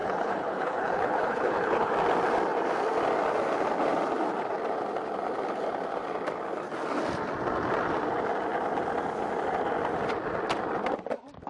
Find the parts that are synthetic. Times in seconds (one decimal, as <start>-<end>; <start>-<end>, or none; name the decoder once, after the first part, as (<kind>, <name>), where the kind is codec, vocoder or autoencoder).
0.0-1.9 (codec, HILCodec)